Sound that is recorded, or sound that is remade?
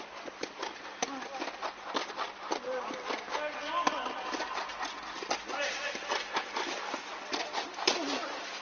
recorded